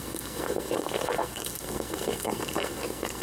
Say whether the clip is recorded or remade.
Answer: remade